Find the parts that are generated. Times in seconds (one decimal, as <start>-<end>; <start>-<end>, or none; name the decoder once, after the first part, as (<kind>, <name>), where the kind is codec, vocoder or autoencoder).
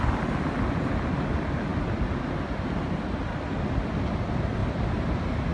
none